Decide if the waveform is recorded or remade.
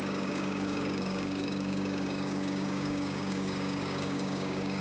remade